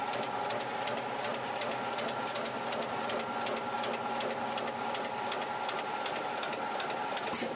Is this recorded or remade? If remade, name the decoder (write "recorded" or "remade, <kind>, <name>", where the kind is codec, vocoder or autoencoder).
recorded